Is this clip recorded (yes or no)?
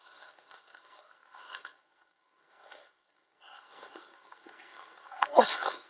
no